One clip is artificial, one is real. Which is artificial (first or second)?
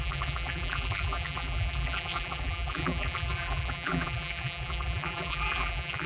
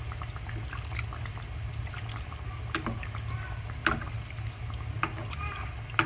first